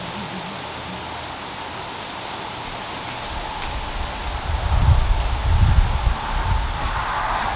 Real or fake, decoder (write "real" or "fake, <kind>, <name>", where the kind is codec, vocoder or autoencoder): real